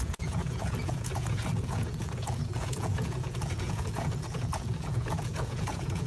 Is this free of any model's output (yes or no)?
no